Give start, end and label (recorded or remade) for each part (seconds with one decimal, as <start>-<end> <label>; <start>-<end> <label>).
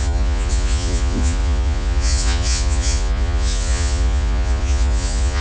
0.0-5.4 remade